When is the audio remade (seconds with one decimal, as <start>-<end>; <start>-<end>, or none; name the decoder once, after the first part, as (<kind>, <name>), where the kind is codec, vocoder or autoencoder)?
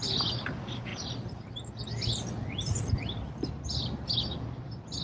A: none